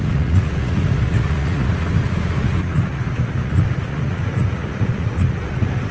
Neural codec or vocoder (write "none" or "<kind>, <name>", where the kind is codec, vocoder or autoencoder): vocoder, Vocos